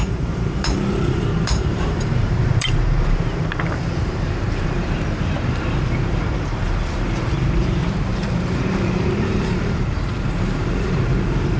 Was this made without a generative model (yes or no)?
no